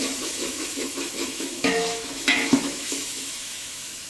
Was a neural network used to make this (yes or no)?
yes